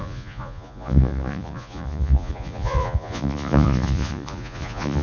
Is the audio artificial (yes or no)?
yes